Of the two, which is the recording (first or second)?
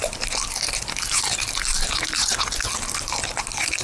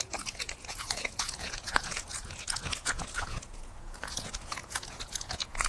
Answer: first